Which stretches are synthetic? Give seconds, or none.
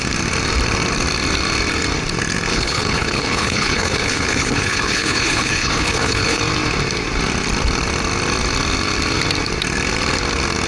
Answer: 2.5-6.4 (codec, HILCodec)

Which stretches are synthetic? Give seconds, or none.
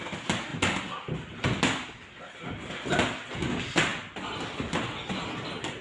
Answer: none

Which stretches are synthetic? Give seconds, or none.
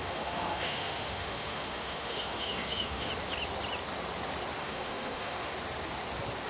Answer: 0.0-3.1 (autoencoder, DAC-VAE); 4.6-5.5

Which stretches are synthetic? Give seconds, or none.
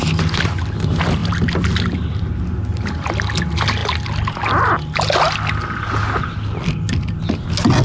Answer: none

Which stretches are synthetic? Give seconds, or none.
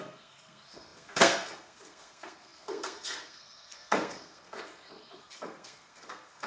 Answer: 0.0-6.5 (codec, SNAC)